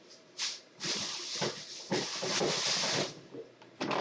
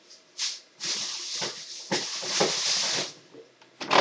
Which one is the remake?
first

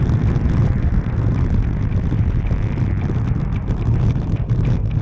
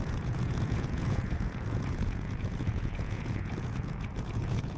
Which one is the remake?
second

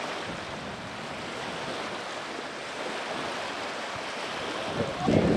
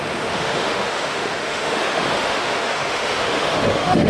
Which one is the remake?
second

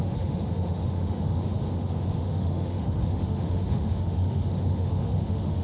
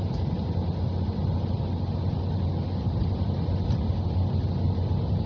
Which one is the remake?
first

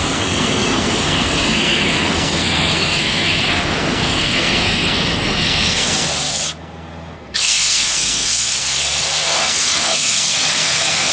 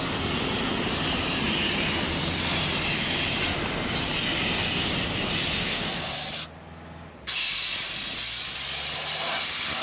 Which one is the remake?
first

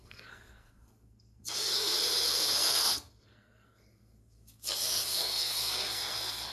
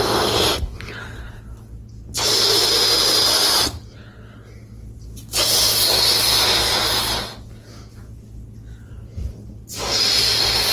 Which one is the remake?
first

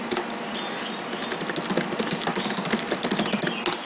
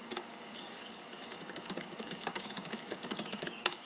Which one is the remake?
second